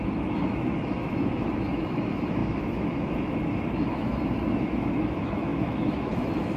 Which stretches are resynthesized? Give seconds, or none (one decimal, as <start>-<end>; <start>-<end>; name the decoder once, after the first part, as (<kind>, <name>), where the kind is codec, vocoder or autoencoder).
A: 0.0-6.6 (autoencoder, DAC-VAE)

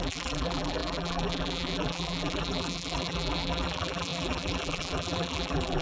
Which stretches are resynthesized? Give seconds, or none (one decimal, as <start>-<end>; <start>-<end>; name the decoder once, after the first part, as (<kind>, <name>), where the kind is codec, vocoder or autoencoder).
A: 0.0-5.8 (vocoder, BigVGAN v2)

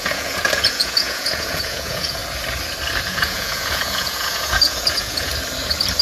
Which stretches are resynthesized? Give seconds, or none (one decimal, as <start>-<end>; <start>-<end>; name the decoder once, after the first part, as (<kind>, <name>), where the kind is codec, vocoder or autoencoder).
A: 0.0-2.2 (vocoder, Vocos); 3.1-5.3

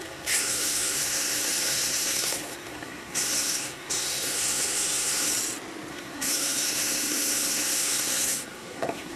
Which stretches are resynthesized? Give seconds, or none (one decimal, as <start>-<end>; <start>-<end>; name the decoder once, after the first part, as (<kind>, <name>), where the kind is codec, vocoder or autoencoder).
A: 0.0-5.3 (codec, SNAC); 5.9-9.2

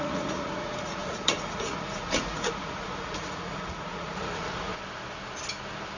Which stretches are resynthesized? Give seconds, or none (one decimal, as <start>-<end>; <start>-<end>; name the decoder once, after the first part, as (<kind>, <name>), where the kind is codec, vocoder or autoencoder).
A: 0.0-4.7 (vocoder, Vocos)